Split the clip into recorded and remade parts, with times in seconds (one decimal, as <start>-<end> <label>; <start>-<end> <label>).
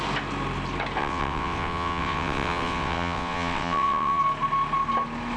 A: 0.0-1.0 recorded; 1.0-4.2 remade; 4.2-5.4 recorded